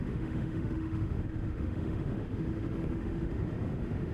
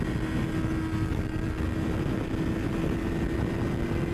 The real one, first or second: second